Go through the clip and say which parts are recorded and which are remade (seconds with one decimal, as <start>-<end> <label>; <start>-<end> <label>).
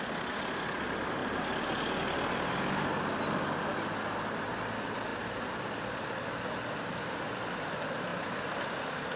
0.0-9.2 recorded